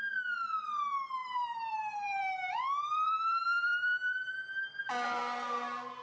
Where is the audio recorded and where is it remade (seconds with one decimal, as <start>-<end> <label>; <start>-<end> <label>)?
0.0-1.2 recorded; 1.2-4.8 remade; 4.8-6.0 recorded